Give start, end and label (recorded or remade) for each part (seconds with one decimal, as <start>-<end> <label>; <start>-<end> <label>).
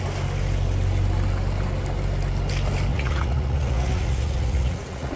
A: 0.0-2.9 recorded; 2.9-5.2 remade